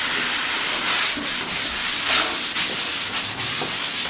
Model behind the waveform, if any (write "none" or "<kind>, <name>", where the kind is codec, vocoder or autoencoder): none